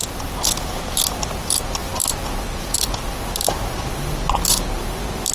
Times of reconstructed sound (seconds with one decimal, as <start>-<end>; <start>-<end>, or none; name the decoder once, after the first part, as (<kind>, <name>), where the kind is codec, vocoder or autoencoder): none